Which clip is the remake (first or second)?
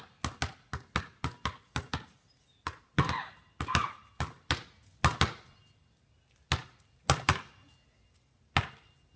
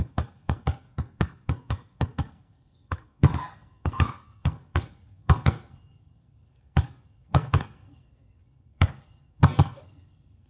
second